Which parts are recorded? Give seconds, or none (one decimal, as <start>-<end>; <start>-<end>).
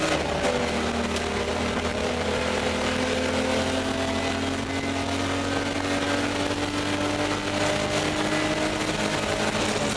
0.0-1.5; 3.0-10.0